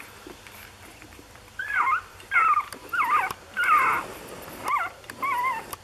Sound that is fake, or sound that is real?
fake